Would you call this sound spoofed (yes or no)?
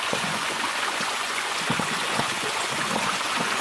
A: yes